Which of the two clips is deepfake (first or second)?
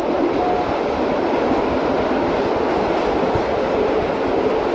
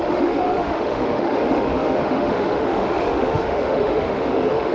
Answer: second